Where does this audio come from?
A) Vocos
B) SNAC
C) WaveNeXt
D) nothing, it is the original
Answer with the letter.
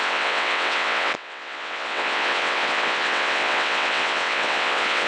C